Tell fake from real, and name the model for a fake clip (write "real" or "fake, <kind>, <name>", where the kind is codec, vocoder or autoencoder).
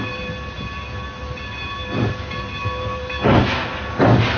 real